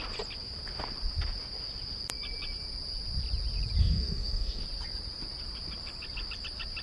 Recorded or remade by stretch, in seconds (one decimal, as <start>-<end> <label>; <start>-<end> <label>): 0.0-3.8 recorded; 3.8-4.6 remade; 4.6-6.8 recorded